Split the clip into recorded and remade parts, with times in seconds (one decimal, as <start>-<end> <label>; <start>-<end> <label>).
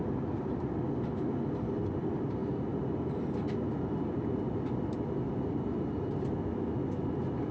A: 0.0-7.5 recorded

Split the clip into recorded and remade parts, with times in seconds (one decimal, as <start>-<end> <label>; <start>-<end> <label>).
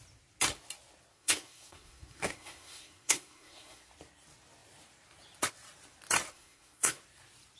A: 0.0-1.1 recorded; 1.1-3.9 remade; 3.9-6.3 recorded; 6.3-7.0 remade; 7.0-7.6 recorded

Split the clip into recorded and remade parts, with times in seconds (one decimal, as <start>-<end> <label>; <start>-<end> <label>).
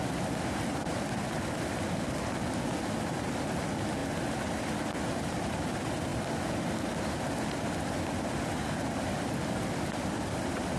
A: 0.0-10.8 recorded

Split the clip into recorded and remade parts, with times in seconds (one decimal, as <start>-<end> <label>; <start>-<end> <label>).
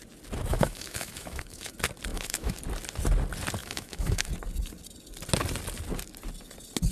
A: 0.0-0.5 recorded; 0.5-1.7 remade; 1.7-2.1 recorded; 2.1-2.6 remade; 2.6-3.6 recorded; 3.6-4.3 remade; 4.3-6.9 recorded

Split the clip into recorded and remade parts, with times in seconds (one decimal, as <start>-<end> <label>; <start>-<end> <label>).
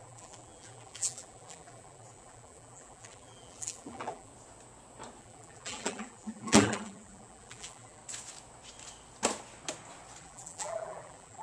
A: 0.0-4.3 remade; 4.3-5.2 recorded; 5.2-8.0 remade; 8.0-10.2 recorded; 10.2-11.4 remade